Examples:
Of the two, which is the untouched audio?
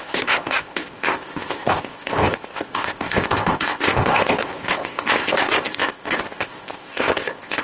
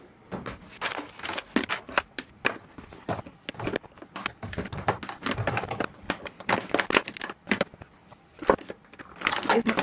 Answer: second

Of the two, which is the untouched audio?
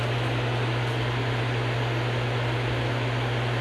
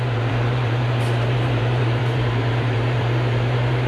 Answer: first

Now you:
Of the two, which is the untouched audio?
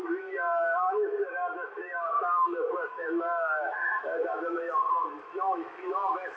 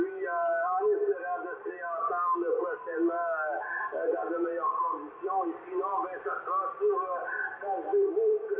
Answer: second